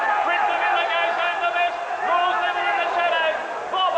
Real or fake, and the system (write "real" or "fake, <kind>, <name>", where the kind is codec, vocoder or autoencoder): real